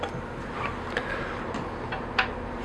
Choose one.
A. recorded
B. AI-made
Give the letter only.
A